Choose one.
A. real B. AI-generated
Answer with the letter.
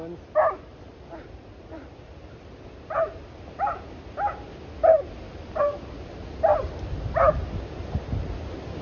A